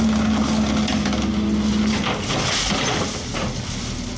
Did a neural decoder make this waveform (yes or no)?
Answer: no